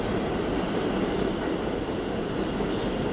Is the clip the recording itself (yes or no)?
yes